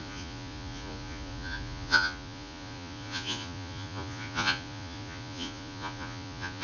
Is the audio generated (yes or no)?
yes